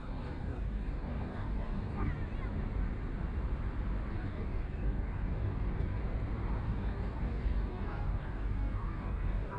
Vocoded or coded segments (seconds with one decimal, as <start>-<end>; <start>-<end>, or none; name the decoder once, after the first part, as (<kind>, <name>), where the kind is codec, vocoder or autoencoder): 0.0-2.1 (codec, DAC); 4.1-6.0; 6.6-9.6